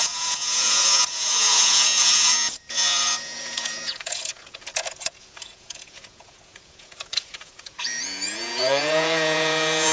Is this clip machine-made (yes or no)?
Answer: yes